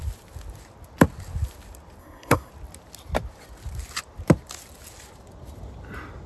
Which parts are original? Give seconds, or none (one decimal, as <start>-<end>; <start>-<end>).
0.0-2.0; 2.5-6.3